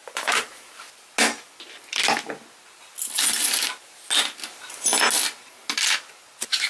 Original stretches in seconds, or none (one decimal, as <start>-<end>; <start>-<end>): 0.8-6.7